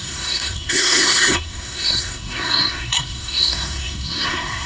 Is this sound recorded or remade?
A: remade